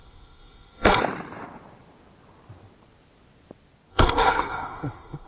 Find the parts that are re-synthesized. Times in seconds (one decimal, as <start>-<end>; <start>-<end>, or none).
0.0-1.0; 3.9-5.3